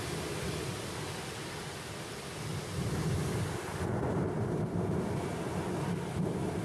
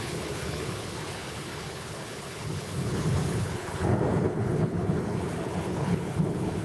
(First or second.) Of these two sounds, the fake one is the second